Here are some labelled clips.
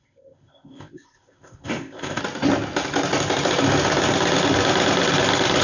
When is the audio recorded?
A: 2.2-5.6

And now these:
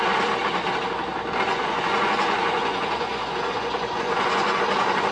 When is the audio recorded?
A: 0.0-1.5; 4.6-5.1

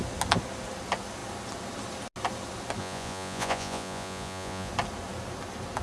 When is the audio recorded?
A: 0.0-2.8; 4.7-5.8

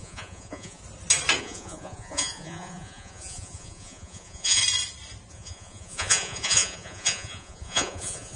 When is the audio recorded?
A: 0.8-1.4; 4.6-5.3

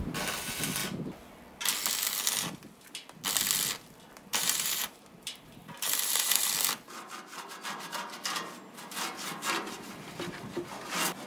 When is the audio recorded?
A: 0.0-4.3; 6.5-11.3

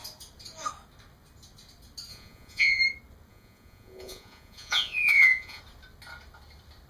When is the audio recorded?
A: 0.0-2.1; 2.8-3.3; 5.6-6.9